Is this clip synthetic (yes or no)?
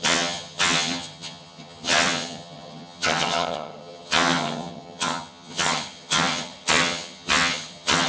yes